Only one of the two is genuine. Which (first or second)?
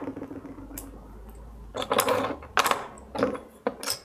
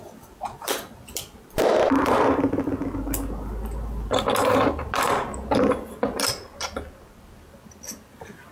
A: first